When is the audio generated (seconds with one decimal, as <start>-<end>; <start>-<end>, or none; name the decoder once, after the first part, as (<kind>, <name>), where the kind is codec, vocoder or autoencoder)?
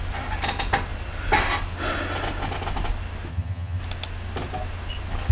3.3-3.8 (vocoder, HiFi-GAN)